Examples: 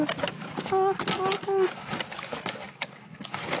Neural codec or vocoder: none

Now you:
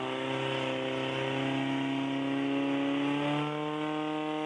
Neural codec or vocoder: none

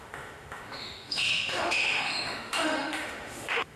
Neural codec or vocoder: autoencoder, DAC-VAE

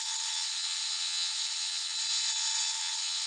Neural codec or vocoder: vocoder, WaveNeXt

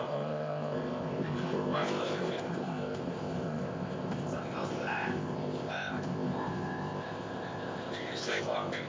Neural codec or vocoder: codec, ZipCodec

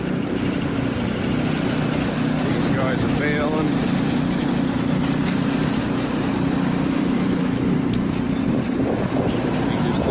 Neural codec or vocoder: none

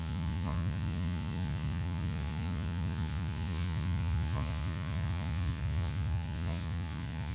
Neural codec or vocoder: vocoder, Vocos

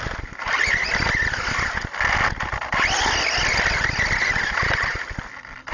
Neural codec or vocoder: none